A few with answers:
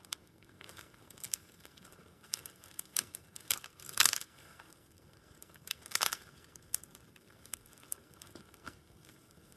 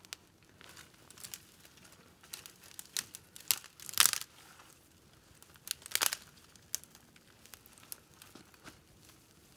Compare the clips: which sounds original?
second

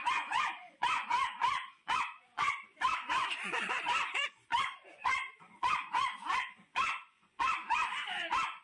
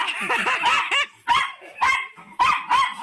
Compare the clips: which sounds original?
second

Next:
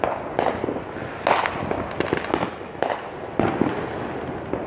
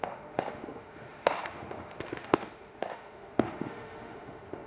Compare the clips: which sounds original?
first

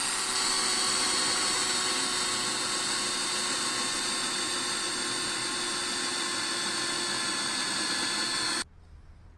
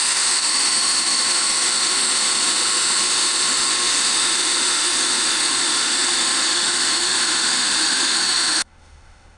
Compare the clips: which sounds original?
first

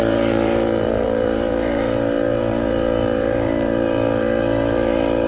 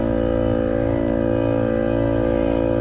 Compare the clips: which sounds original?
second